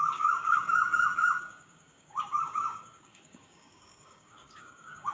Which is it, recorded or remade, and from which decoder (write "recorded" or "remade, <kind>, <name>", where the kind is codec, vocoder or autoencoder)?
remade, codec, DAC